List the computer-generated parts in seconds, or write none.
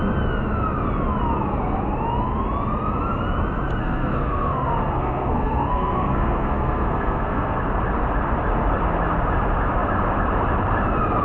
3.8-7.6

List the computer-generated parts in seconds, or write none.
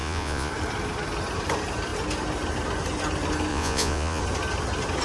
0.0-0.5; 3.5-4.2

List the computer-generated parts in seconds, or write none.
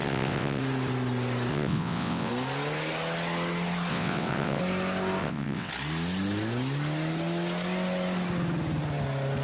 0.0-0.6; 1.5-2.3; 3.9-4.6; 5.2-5.7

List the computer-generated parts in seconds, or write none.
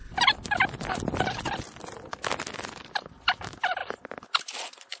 none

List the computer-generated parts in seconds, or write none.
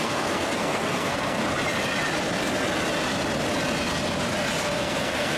0.0-1.4; 4.6-5.4